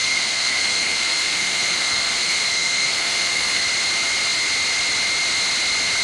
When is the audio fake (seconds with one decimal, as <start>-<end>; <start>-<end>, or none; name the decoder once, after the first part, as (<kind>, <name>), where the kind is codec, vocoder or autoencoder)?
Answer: 0.0-3.6 (codec, SNAC)